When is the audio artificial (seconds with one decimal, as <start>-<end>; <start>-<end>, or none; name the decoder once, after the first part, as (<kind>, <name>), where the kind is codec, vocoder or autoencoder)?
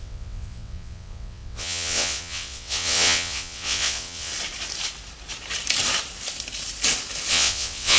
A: 0.0-4.3 (vocoder, WaveNeXt); 7.3-8.0